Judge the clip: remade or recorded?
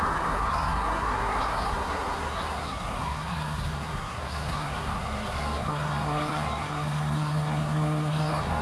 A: remade